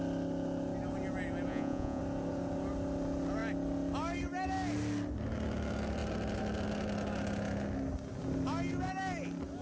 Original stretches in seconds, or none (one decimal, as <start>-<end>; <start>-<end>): 0.0-1.5; 2.0-9.6